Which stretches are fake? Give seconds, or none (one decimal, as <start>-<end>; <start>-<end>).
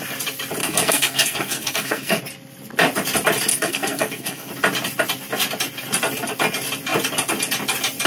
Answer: 0.6-2.2; 3.5-4.5